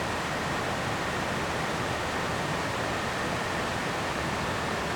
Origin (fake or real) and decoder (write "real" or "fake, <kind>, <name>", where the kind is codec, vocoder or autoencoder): real